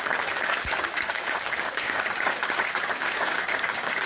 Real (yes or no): no